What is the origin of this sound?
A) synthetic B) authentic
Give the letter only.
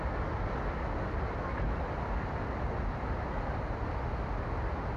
B